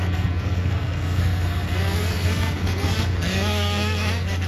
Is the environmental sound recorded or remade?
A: remade